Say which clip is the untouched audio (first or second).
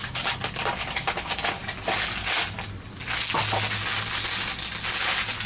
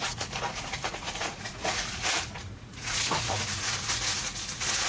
first